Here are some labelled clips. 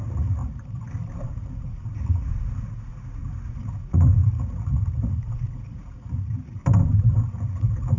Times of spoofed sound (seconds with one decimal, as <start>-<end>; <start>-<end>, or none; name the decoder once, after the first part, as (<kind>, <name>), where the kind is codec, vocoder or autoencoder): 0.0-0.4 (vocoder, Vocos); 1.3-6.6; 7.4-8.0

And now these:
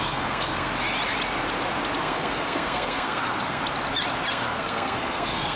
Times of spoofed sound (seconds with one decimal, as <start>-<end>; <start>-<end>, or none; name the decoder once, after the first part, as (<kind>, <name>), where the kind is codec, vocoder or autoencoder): 0.0-0.7 (codec, SNAC); 2.0-3.6; 4.3-5.6

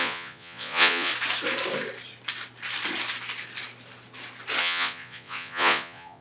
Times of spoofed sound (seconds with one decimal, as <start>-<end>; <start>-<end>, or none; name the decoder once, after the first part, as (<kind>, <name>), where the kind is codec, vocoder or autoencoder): 0.0-1.1 (vocoder, Vocos); 4.6-6.2

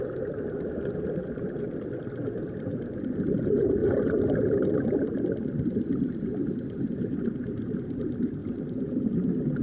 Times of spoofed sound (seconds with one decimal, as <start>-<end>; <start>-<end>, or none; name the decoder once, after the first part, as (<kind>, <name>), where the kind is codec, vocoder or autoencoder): 0.0-3.8 (vocoder, BigVGAN v2); 5.2-9.6

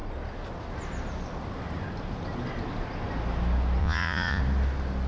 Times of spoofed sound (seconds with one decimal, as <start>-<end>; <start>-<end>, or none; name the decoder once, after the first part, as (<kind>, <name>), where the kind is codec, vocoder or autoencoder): 3.8-4.4 (vocoder, Vocos)